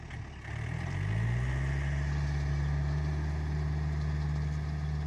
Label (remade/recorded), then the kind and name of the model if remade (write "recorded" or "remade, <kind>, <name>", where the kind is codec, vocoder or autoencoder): recorded